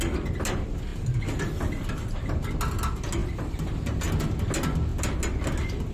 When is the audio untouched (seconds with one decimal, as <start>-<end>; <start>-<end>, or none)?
0.0-5.9